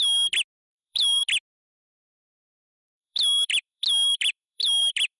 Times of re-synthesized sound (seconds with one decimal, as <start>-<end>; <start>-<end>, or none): 0.7-1.2; 2.7-5.2